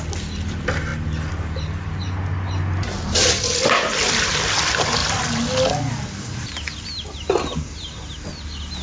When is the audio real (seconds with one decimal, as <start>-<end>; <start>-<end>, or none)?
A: 0.0-8.8